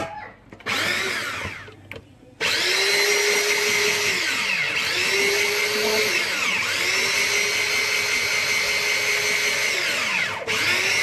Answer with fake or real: real